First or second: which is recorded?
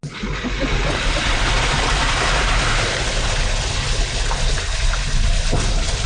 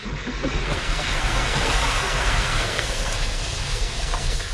first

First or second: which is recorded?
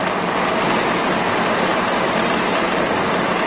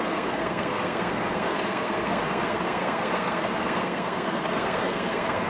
first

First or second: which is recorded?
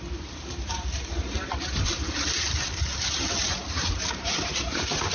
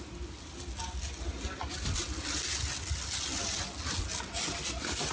second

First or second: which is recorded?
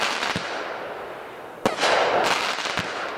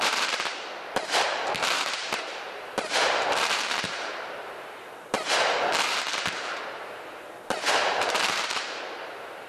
first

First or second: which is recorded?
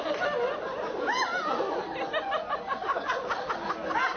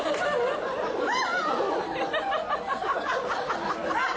first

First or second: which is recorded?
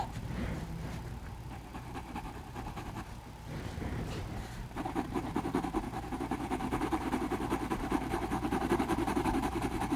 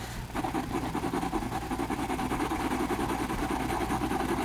second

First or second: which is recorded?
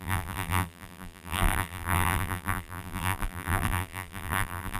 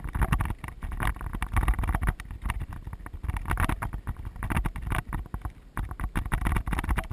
second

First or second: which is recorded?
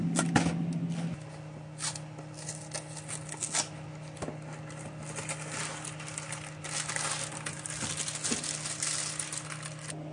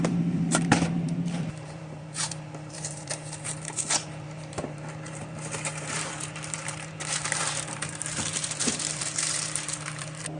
first